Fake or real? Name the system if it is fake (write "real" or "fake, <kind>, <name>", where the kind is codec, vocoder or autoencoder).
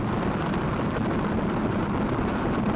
real